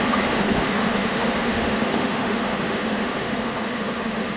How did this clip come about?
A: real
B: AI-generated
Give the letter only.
B